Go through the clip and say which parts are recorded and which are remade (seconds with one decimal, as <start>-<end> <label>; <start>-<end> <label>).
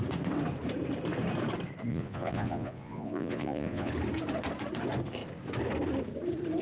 0.0-1.9 recorded; 1.9-3.9 remade; 3.9-6.6 recorded